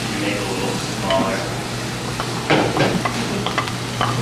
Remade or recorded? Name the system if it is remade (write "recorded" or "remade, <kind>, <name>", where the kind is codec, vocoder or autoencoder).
recorded